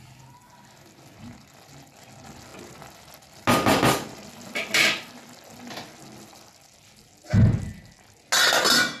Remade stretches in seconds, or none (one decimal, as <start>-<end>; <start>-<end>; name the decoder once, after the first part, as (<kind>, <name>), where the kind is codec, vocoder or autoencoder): none